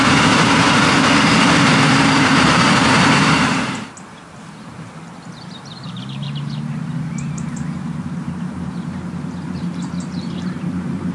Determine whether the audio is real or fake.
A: fake